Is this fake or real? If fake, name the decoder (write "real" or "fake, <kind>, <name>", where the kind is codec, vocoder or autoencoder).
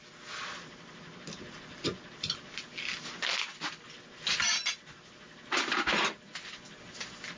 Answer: real